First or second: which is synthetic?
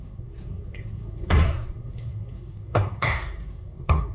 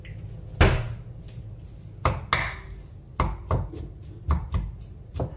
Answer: first